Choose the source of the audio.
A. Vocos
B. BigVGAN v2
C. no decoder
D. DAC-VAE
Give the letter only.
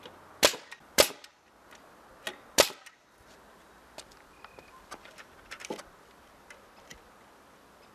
C